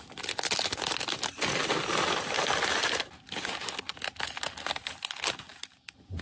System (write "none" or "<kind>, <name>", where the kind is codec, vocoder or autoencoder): none